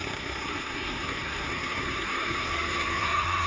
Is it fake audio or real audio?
fake